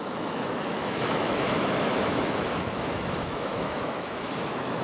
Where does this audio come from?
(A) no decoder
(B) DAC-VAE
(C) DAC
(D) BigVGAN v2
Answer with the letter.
B